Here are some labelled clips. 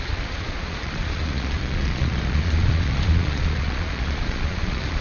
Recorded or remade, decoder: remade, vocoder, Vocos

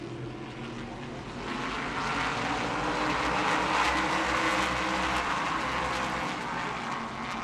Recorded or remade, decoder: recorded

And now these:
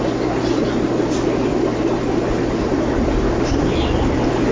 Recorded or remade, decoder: recorded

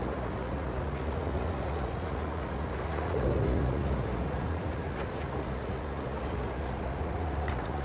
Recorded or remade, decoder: remade, vocoder, Vocos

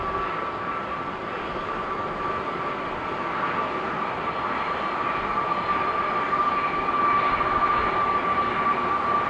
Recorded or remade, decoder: recorded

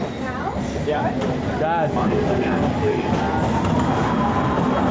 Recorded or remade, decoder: recorded